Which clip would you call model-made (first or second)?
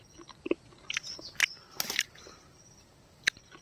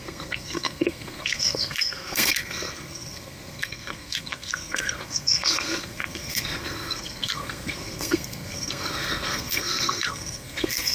second